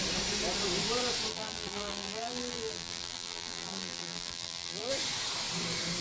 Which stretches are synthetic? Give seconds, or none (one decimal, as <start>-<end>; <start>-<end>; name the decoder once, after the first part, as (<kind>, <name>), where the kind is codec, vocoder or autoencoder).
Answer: 1.3-4.9 (vocoder, BigVGAN v2)